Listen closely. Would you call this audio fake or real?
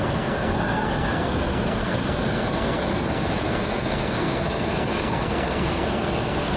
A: fake